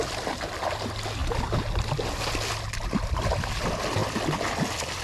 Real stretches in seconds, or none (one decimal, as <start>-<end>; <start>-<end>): 0.0-5.0